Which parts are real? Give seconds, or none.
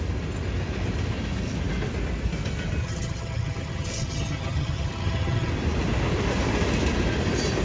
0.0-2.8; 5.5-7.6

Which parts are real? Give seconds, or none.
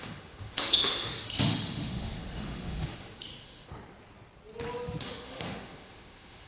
3.7-5.0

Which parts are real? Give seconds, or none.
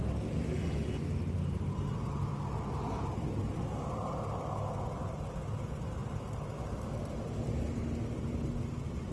0.0-9.1